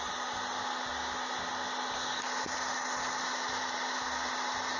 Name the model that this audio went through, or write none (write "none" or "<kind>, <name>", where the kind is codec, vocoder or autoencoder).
none